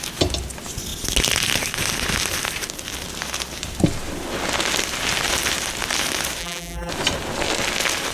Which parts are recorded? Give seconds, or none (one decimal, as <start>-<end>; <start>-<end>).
0.0-6.4; 6.9-8.1